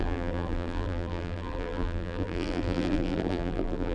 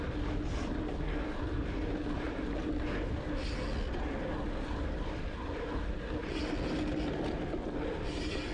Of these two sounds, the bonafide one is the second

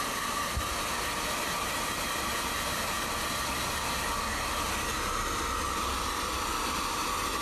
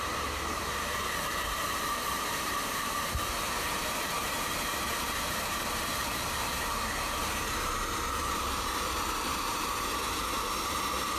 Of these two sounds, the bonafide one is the first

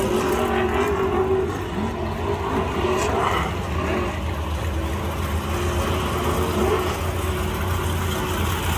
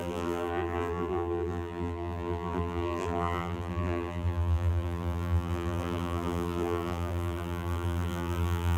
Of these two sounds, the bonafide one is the first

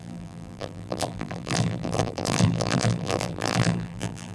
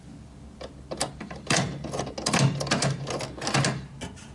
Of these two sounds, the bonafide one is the second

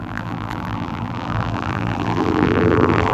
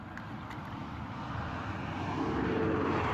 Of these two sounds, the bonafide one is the second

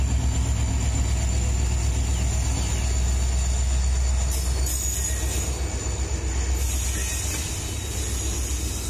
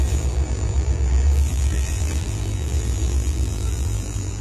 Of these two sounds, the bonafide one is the first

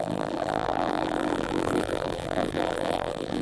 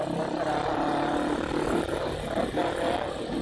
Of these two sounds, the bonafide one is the second